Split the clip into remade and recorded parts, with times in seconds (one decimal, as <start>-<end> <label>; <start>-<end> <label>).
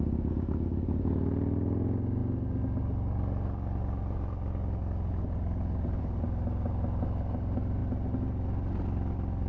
0.0-9.5 recorded